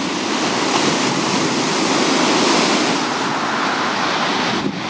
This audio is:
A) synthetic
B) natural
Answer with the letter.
B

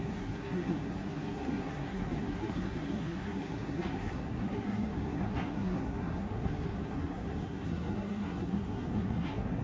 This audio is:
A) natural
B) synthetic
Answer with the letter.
B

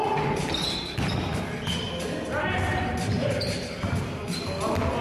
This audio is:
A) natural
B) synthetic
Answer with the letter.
A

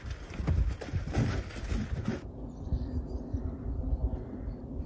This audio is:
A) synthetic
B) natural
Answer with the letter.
B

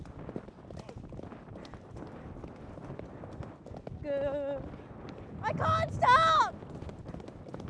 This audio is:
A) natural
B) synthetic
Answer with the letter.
A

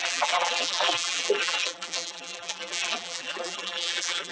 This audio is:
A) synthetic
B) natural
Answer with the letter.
A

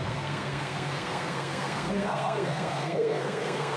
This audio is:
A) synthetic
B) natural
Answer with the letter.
A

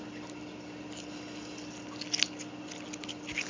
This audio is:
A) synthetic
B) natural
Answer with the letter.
B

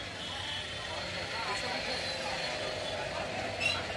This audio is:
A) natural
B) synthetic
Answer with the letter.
A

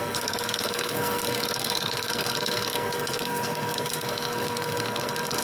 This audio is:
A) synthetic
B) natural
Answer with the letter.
A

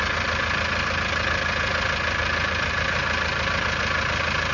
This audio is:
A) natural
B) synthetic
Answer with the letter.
A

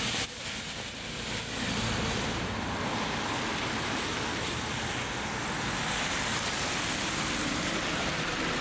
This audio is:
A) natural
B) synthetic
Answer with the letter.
A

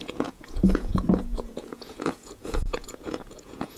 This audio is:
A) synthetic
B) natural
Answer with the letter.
A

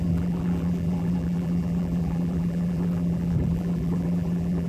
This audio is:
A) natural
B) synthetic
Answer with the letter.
B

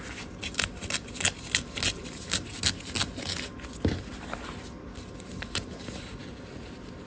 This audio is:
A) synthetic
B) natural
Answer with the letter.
B